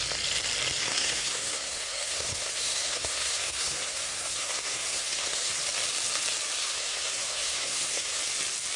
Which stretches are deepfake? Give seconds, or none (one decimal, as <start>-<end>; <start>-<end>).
0.8-5.6; 6.6-8.2